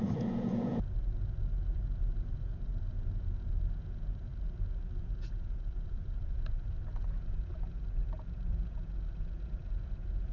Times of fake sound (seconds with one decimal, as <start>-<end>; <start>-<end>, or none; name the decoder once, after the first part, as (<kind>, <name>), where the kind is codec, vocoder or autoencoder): 0.0-4.3 (vocoder, Vocos); 5.0-10.3